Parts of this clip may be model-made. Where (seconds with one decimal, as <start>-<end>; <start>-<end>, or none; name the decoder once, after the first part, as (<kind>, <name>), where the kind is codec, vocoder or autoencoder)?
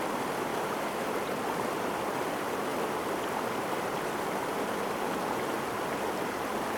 none